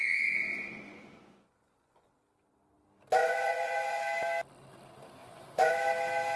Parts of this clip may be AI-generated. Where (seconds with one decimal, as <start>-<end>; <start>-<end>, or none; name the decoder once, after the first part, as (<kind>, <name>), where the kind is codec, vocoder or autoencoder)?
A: 0.0-2.1 (vocoder, Vocos); 3.2-4.0; 5.2-5.7